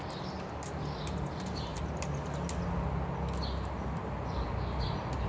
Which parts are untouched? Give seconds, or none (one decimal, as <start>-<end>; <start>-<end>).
0.0-5.3